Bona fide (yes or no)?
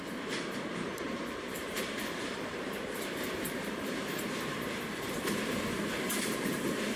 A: no